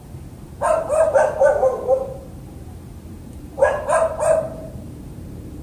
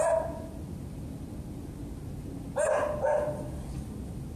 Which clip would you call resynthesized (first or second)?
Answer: first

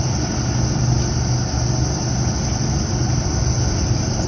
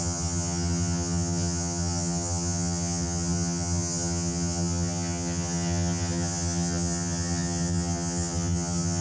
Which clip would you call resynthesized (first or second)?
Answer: second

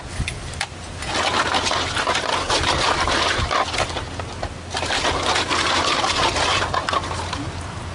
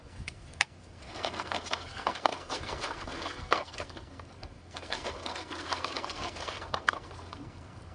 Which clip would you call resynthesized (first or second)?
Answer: second